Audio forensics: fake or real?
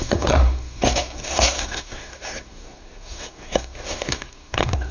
fake